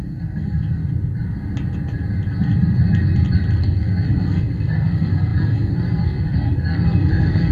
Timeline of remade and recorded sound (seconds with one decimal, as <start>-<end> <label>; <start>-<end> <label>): 0.0-0.8 remade; 0.8-3.6 recorded; 3.6-7.5 remade